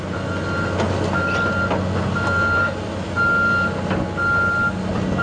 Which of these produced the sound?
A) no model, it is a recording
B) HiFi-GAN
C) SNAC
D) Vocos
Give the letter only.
A